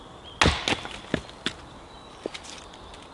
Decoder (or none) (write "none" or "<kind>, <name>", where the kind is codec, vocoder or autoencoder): none